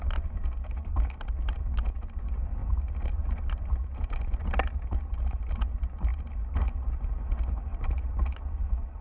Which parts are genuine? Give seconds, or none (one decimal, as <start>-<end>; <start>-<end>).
0.0-9.0